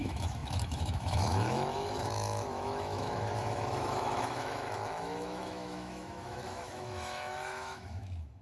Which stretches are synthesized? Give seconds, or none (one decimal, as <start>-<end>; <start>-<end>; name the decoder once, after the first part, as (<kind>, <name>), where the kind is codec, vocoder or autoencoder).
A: 0.0-8.4 (autoencoder, DAC-VAE)